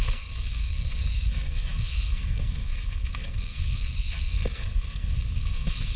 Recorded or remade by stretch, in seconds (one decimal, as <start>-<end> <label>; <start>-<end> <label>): 0.0-6.0 remade